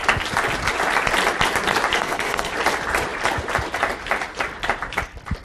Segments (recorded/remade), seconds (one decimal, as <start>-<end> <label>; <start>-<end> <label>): 0.0-2.0 recorded; 2.0-2.5 remade; 2.5-5.4 recorded